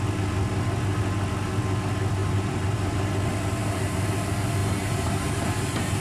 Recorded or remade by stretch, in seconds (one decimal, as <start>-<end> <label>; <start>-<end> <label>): 0.0-2.2 recorded; 2.2-3.0 remade; 3.0-3.6 recorded; 3.6-4.1 remade; 4.1-4.6 recorded; 4.6-6.0 remade